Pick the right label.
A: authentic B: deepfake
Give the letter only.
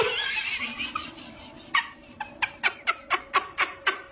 A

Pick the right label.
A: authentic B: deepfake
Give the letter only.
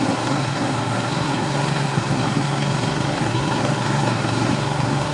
B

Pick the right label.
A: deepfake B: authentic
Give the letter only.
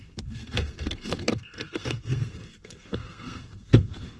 A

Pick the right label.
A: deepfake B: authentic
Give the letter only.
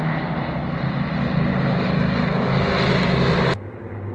B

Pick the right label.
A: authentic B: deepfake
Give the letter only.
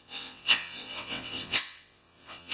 B